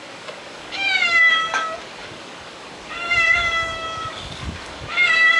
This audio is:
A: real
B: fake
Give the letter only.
B